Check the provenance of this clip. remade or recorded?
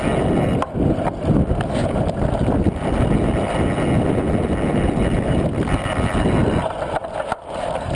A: recorded